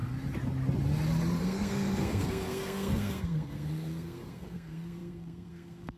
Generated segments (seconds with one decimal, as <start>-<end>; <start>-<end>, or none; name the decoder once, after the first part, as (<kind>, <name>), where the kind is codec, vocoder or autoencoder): 1.4-6.0 (codec, SNAC)